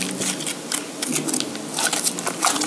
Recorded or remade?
recorded